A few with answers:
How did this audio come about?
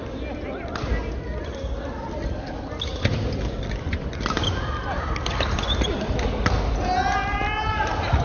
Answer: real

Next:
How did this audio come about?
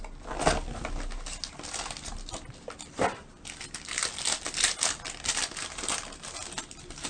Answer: real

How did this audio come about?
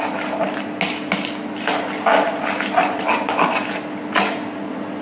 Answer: real